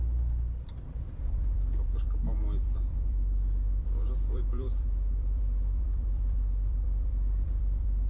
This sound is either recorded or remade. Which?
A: remade